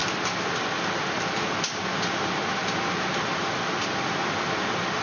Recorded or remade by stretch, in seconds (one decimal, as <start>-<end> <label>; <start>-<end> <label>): 0.0-5.0 recorded